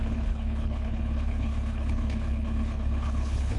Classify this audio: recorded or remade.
remade